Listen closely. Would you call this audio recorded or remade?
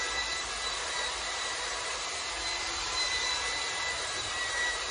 remade